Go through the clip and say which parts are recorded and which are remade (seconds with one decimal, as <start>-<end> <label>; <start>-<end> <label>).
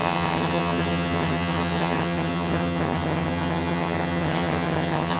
0.0-5.2 remade